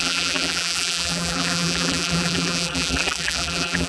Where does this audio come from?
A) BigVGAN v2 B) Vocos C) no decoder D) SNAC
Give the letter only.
A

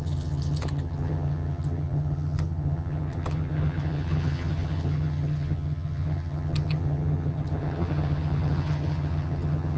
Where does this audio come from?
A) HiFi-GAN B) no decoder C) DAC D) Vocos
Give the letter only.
A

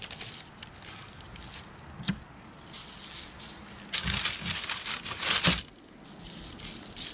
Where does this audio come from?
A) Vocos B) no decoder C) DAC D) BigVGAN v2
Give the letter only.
B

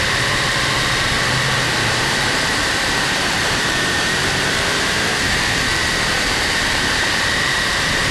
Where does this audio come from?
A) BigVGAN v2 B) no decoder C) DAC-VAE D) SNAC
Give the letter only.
A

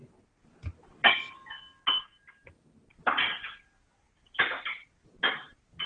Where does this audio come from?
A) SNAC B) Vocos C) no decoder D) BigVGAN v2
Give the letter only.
C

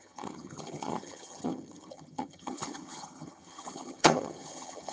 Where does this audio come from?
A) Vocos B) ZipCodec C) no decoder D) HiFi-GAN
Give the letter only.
D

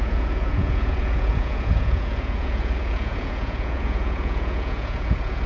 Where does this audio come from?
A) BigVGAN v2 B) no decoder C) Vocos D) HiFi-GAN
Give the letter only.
C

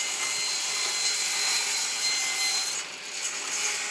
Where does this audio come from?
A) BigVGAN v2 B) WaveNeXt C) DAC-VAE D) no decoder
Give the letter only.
D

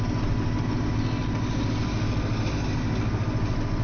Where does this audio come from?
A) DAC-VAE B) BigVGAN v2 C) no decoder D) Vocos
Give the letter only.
C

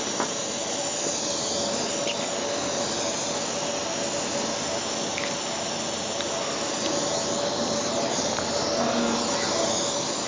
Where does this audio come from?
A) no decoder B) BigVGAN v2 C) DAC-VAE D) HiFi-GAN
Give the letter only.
A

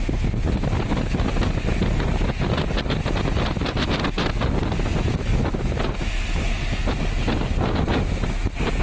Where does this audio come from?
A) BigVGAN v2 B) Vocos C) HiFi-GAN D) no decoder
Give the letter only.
D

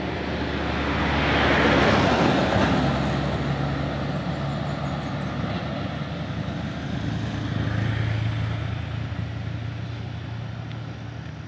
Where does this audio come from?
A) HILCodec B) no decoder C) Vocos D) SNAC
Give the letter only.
B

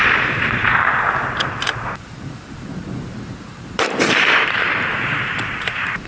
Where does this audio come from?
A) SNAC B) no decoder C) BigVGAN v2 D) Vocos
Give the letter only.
C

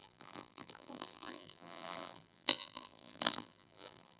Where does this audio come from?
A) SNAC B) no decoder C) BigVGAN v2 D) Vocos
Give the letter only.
C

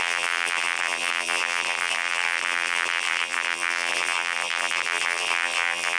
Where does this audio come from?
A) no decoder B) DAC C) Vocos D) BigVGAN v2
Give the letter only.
D